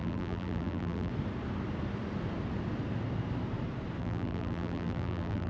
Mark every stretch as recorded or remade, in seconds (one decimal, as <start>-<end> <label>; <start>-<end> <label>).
0.0-1.1 remade; 1.1-4.0 recorded; 4.0-5.5 remade